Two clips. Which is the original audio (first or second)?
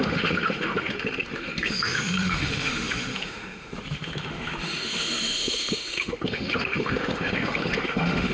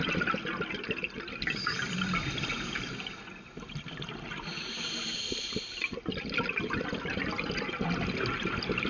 second